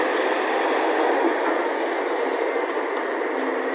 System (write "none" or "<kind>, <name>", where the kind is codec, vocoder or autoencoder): none